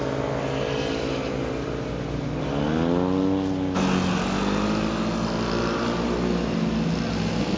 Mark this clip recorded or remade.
recorded